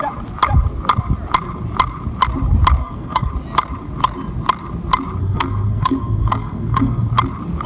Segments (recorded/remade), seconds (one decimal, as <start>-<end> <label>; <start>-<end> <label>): 0.0-2.8 recorded; 2.8-3.3 remade; 3.3-5.2 recorded; 5.2-7.1 remade; 7.1-7.7 recorded